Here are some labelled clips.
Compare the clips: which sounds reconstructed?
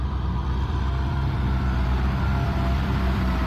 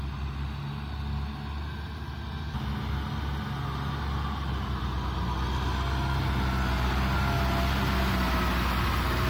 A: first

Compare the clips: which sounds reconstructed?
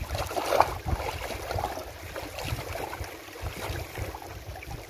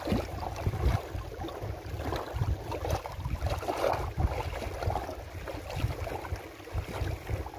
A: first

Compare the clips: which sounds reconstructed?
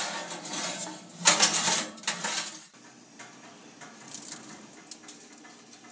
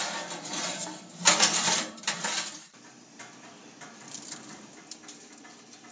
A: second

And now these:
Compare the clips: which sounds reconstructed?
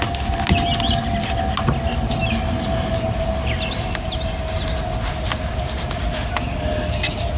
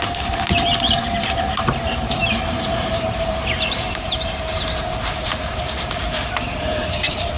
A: second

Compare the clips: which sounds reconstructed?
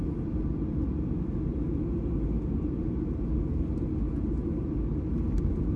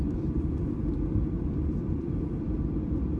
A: second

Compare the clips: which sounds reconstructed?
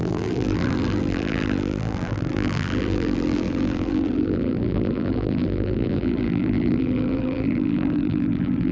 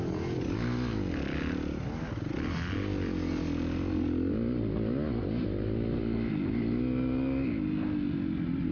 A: first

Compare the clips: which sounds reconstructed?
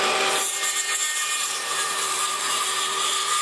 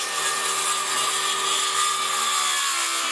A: first